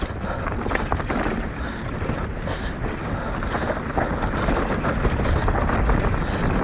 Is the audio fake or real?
real